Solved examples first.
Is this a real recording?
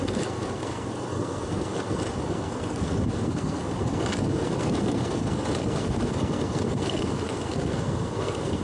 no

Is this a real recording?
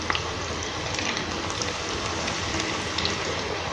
yes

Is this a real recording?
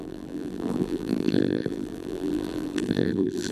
no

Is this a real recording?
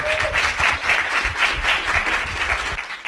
yes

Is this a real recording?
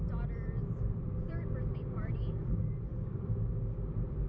no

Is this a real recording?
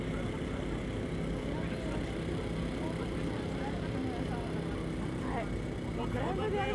yes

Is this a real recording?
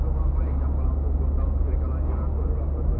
yes